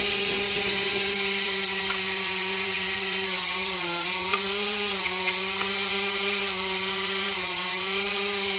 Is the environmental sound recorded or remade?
remade